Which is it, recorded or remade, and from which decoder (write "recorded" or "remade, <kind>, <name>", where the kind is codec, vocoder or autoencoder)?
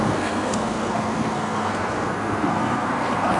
remade, codec, SNAC